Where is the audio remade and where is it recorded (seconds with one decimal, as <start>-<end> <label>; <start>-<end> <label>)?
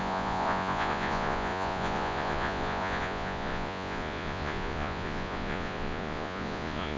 0.0-7.0 remade